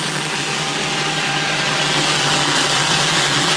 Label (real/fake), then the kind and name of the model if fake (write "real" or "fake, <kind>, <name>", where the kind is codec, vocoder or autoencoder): real